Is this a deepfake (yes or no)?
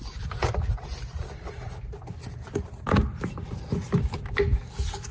no